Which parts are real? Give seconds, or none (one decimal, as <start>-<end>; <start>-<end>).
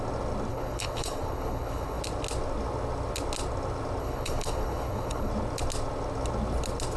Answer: 0.0-0.5; 2.0-4.0; 5.3-7.0